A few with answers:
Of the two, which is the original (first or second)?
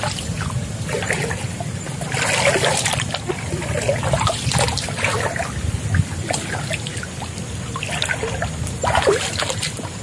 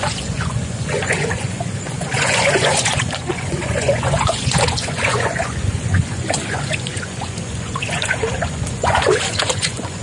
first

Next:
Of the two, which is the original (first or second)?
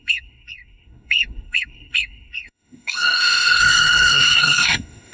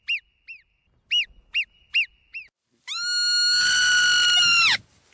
second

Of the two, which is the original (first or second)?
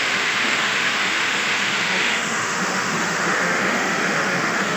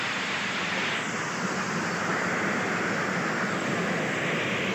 second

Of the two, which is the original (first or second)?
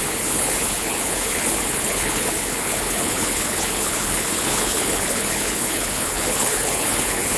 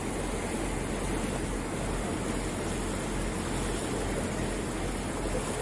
second